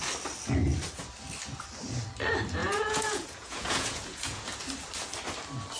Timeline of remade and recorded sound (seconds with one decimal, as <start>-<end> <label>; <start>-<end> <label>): 0.0-2.6 recorded; 2.6-4.4 remade; 4.4-5.8 recorded